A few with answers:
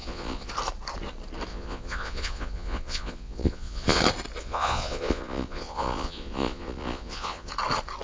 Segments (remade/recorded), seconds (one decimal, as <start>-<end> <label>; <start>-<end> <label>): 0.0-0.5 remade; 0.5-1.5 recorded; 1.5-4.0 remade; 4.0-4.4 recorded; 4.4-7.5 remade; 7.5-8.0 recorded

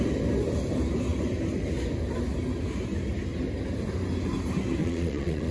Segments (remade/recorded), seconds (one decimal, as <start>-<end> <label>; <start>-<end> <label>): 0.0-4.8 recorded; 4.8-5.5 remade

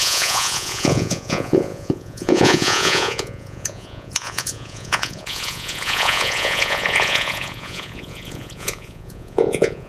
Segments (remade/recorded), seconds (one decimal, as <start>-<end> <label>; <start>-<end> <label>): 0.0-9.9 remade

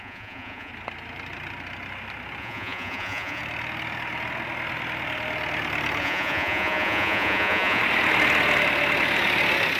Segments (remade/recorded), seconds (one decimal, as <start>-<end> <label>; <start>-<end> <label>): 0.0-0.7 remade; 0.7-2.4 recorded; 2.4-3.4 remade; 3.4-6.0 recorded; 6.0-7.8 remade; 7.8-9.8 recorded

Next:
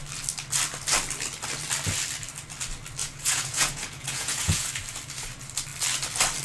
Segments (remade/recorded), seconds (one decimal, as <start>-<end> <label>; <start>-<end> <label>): 0.0-3.0 recorded; 3.0-4.7 remade; 4.7-6.4 recorded